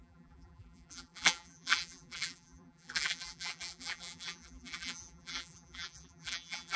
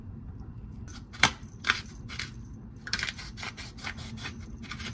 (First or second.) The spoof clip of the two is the first